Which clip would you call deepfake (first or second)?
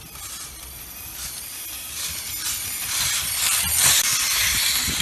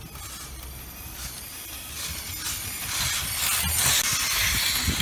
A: first